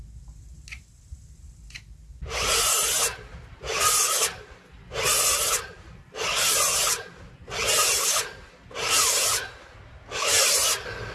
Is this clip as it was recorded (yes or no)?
yes